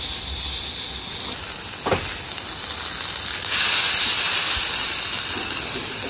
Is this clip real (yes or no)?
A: yes